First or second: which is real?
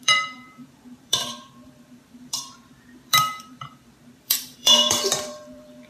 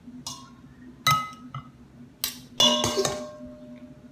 second